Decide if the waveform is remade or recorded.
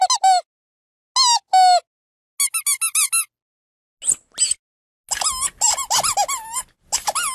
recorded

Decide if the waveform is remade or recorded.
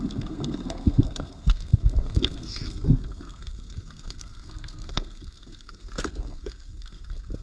remade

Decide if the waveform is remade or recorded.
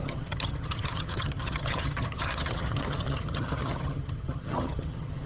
remade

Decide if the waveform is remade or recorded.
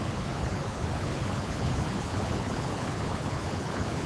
remade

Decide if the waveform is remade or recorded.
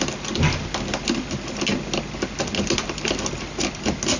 recorded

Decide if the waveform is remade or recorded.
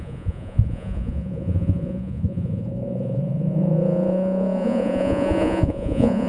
remade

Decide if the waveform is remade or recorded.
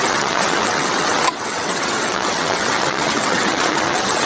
remade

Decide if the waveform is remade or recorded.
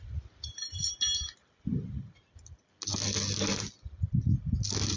recorded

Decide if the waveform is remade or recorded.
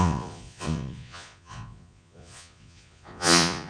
remade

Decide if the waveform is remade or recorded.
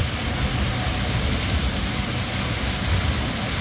recorded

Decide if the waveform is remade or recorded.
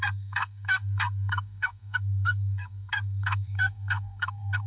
remade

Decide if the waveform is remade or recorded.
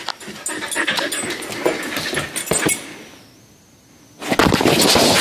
recorded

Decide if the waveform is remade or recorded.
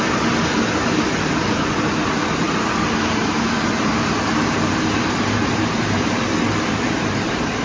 remade